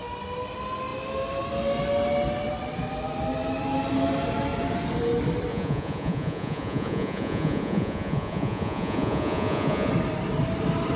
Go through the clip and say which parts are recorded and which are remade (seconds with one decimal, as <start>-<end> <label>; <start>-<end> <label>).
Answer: 0.0-5.5 recorded; 5.5-9.9 remade; 9.9-11.0 recorded